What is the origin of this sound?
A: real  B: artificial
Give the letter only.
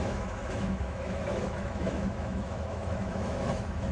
B